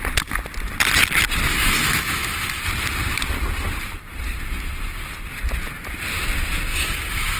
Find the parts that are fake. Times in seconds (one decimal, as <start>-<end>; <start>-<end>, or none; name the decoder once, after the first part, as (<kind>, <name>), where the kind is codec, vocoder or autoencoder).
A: 1.5-2.6 (autoencoder, DAC-VAE); 6.7-7.4